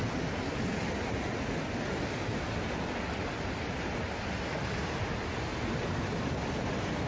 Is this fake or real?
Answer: real